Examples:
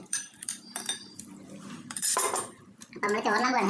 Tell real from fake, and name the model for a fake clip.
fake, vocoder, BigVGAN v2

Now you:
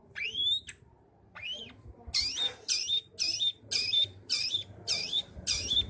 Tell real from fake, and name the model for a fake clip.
real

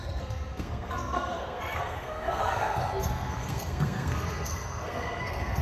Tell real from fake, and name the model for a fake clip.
fake, codec, SNAC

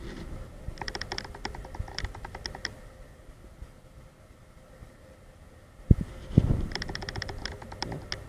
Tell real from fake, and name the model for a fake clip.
real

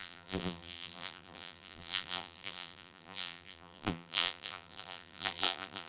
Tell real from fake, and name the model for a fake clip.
fake, vocoder, BigVGAN v2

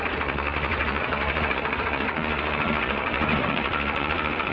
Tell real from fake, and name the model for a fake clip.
fake, vocoder, Vocos